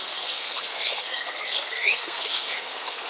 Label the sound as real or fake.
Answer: fake